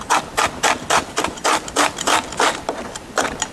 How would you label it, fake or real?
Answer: real